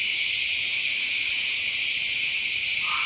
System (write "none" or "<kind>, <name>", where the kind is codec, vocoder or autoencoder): vocoder, BigVGAN v2